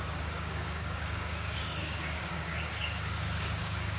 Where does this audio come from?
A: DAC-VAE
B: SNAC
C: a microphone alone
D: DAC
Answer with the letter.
D